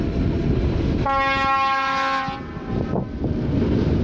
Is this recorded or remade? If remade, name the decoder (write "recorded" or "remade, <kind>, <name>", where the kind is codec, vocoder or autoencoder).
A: recorded